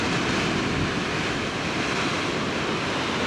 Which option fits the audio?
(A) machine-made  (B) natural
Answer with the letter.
B